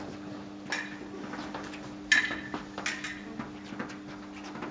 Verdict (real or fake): real